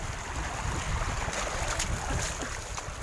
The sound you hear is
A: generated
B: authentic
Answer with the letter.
B